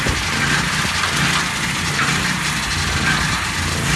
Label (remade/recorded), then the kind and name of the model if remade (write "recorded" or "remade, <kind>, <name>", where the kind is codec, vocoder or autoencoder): recorded